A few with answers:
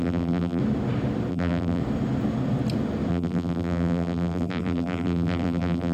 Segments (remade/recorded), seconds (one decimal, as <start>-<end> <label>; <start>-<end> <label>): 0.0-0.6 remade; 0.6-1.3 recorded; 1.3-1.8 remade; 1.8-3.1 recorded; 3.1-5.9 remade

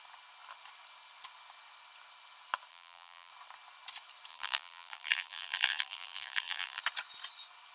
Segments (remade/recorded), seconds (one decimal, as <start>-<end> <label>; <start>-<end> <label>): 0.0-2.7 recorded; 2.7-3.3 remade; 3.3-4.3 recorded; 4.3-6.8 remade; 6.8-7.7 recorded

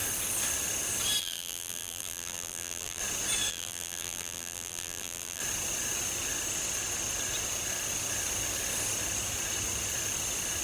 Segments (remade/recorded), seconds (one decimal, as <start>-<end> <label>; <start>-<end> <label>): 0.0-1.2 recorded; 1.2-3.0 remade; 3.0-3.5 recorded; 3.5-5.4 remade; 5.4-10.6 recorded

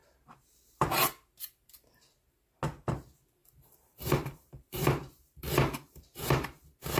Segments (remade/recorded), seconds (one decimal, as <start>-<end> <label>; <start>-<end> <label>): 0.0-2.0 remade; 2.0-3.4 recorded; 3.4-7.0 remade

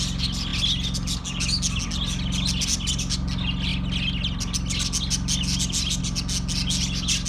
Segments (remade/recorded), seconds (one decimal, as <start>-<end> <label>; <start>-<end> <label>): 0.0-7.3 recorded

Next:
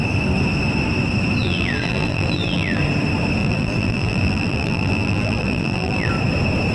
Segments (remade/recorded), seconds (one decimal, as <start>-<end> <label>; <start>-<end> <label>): 0.0-1.4 recorded; 1.4-2.8 remade; 2.8-3.4 recorded; 3.4-6.1 remade; 6.1-6.7 recorded